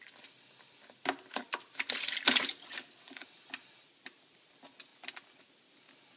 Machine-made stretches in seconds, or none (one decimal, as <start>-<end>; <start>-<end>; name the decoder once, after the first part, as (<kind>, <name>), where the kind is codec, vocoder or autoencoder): none